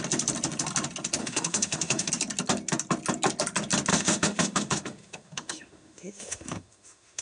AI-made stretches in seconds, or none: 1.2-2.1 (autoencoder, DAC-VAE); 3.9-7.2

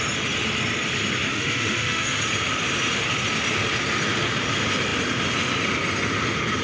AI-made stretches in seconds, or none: 1.3-2.2 (autoencoder, DAC-VAE)

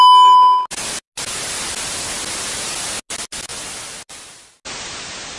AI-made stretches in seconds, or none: none

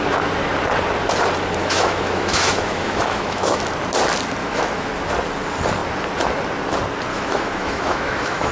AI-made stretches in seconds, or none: 1.6-3.6 (autoencoder, DAC-VAE); 4.4-4.9; 7.1-8.5

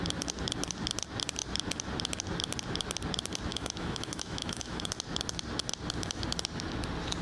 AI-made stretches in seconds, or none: 3.5-4.9 (autoencoder, DAC-VAE)

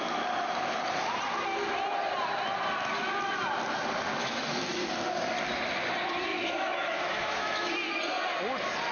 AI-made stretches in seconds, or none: 4.1-4.8 (autoencoder, DAC-VAE); 6.3-7.7

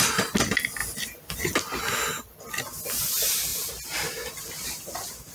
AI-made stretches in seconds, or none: none